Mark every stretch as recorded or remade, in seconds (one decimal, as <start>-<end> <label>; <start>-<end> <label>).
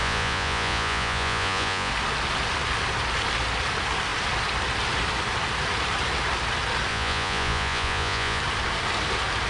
0.0-1.9 remade; 1.9-6.9 recorded; 6.9-8.4 remade; 8.4-9.5 recorded